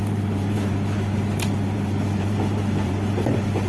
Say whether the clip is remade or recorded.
remade